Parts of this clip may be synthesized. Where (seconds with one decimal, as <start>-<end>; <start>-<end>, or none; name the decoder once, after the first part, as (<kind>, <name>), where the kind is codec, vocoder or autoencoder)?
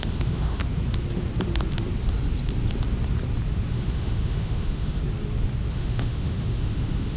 0.0-0.6 (autoencoder, DAC-VAE); 3.7-5.0; 5.7-7.2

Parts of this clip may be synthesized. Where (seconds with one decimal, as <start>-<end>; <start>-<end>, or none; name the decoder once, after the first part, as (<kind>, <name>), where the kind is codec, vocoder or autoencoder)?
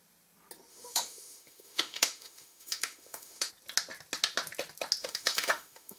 0.7-3.5 (autoencoder, DAC-VAE); 5.0-6.0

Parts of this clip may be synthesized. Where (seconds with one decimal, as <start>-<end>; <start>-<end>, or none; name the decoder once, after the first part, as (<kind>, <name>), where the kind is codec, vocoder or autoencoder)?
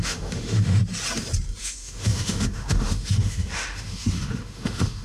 0.0-0.8 (autoencoder, DAC-VAE); 1.6-5.0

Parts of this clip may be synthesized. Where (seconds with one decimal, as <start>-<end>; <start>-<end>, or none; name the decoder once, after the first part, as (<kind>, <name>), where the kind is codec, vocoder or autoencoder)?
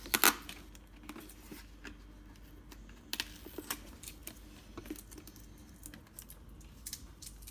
none